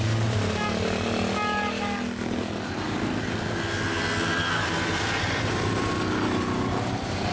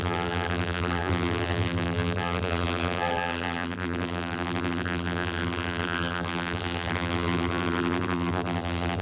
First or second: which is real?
first